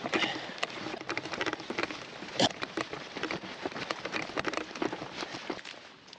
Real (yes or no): yes